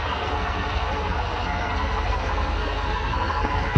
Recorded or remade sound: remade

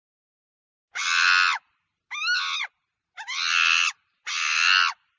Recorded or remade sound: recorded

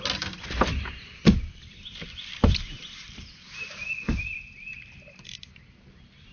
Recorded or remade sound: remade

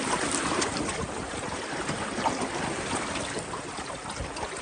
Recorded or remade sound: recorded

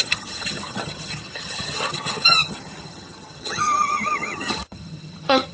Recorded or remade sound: remade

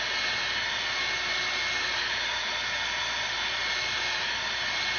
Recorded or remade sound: recorded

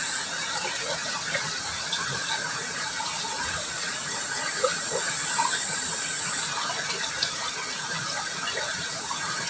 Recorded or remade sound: remade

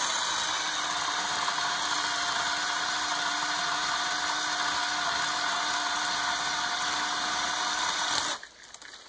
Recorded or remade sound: recorded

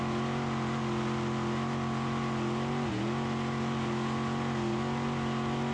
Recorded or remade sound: recorded